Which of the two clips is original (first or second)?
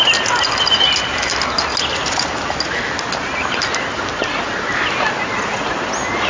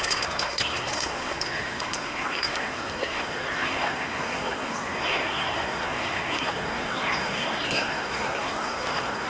first